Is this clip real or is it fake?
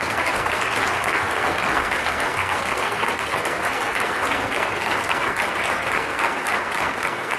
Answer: fake